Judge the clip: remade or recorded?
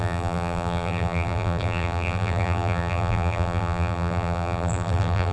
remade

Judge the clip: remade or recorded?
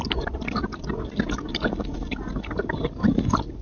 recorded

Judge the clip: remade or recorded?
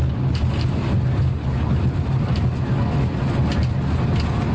recorded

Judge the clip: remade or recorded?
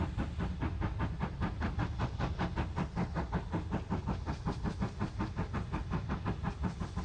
recorded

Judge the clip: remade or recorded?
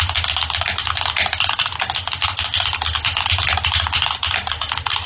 recorded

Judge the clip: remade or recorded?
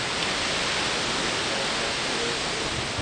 recorded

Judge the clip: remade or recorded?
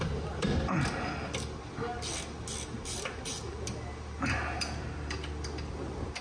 recorded